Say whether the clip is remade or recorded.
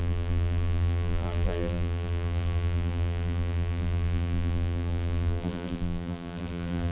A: remade